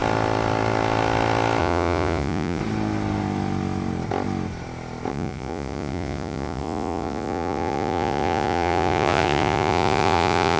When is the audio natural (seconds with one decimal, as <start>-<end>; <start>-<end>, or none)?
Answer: 0.0-1.6; 2.6-5.1